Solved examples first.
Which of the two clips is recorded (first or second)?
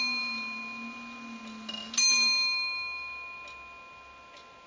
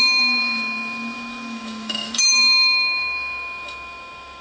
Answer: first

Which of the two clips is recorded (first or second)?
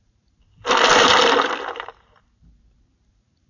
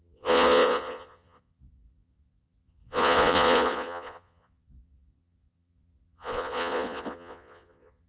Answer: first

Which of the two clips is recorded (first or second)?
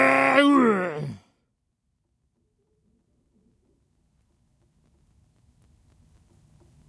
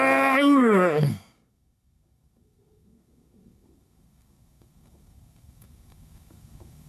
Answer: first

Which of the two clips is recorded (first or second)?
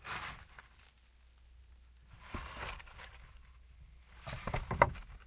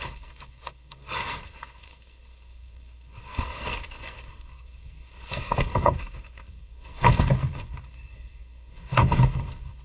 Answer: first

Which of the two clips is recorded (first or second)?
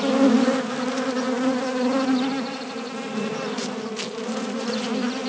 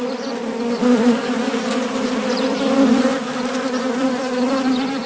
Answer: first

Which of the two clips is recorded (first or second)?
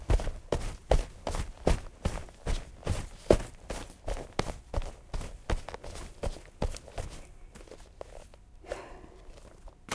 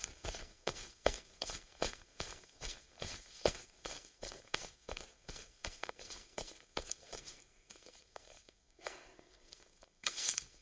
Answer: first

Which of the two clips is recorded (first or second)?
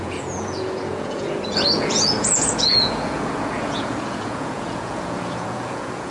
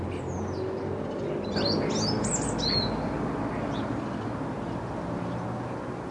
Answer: second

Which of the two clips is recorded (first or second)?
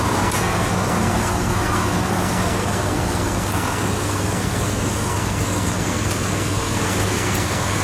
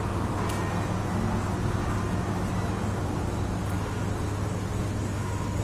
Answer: second